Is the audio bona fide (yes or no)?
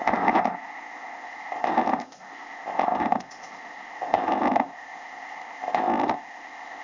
no